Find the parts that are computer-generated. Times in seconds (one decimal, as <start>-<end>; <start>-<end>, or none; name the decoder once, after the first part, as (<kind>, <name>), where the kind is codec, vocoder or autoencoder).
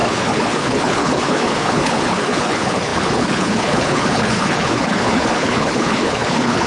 0.0-6.7 (codec, HILCodec)